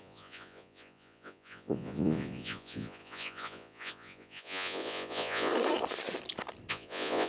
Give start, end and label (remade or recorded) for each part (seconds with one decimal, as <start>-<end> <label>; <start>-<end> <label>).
0.0-5.5 remade; 5.5-6.7 recorded; 6.7-7.3 remade

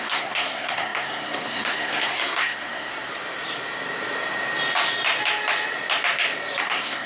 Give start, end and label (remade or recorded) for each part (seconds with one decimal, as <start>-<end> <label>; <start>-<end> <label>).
0.0-2.9 remade; 2.9-6.6 recorded; 6.6-7.1 remade

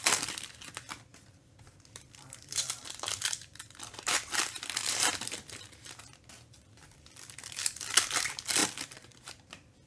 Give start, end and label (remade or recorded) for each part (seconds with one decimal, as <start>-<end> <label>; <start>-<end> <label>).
0.0-9.9 remade

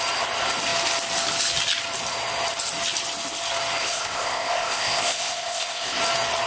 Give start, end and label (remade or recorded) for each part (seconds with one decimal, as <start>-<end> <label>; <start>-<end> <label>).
0.0-3.8 recorded; 3.8-6.0 remade; 6.0-6.5 recorded